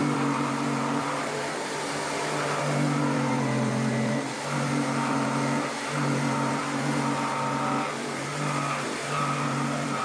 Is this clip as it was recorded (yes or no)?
no